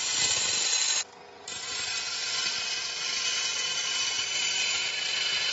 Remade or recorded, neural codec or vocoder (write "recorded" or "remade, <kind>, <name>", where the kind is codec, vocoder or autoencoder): recorded